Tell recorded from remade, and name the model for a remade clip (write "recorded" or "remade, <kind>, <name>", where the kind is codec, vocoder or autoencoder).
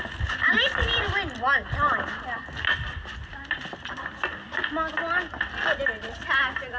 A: recorded